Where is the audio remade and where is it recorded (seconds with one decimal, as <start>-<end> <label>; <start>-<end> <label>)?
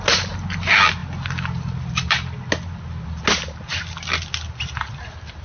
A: 0.0-5.4 recorded